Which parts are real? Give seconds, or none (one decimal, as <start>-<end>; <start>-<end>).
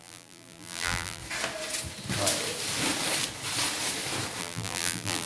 1.2-4.4